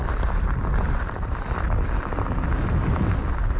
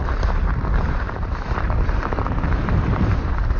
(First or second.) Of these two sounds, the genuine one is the first